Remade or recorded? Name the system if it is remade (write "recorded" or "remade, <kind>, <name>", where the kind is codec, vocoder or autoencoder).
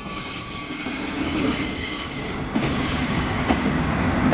remade, codec, DAC